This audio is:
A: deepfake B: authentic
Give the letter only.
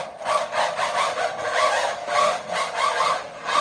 B